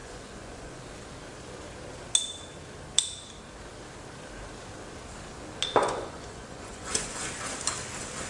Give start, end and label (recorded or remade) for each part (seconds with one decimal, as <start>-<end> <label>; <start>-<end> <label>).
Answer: 0.0-0.8 remade; 0.8-5.8 recorded; 5.8-7.3 remade; 7.3-8.3 recorded